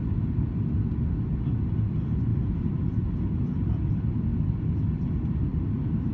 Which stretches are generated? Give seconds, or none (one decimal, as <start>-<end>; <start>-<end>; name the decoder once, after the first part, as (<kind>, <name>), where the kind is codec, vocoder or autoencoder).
2.3-3.9 (vocoder, BigVGAN v2); 5.5-6.1